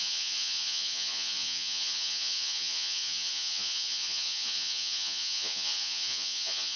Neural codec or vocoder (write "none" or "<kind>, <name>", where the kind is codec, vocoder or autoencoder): vocoder, Vocos